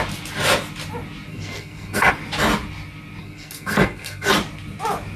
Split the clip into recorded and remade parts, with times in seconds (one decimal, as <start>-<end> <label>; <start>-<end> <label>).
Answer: 0.0-1.3 recorded; 1.3-2.1 remade; 2.1-3.2 recorded; 3.2-4.3 remade; 4.3-5.2 recorded